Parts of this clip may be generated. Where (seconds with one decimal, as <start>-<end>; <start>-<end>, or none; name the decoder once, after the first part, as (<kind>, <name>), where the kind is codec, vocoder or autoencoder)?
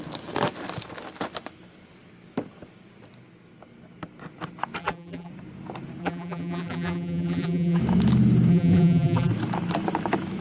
4.8-5.3 (vocoder, BigVGAN v2); 6.0-7.8; 8.5-9.3